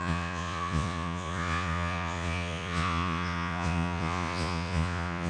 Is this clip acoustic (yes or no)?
no